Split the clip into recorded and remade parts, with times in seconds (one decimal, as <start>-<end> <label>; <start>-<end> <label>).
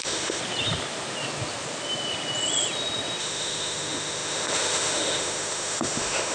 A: 0.0-0.4 remade; 0.4-3.2 recorded; 3.2-6.3 remade